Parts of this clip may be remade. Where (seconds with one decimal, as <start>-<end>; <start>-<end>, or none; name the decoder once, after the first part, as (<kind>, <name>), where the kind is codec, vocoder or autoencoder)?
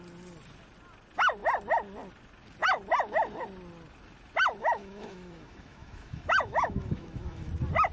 4.6-7.5 (autoencoder, DAC-VAE)